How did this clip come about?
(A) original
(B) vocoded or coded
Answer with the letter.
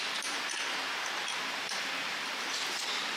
B